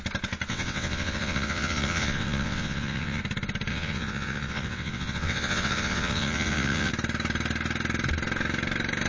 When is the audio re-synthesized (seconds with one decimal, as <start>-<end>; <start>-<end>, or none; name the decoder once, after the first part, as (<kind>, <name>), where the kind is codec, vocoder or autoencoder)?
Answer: 0.5-3.2 (vocoder, WaveNeXt); 3.7-6.9